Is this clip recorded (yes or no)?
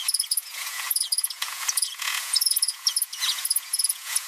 no